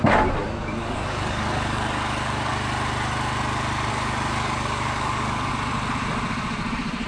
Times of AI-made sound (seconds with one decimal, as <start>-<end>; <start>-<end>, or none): 0.4-2.5; 3.9-5.5